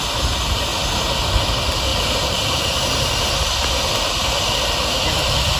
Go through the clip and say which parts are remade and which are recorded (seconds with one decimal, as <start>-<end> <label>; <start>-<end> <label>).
0.0-1.9 recorded; 1.9-3.7 remade; 3.7-5.6 recorded